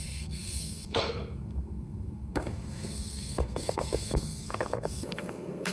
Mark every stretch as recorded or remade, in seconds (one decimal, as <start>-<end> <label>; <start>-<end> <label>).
0.0-5.7 remade